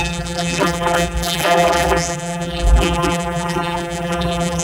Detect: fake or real fake